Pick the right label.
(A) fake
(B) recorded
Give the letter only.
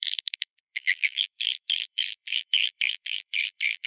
A